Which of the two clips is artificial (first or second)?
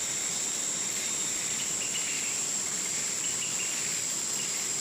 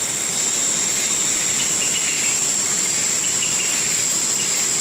first